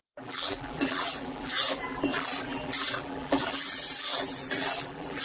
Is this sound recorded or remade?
remade